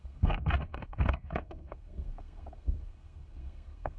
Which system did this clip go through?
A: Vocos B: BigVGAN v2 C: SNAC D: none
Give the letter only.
C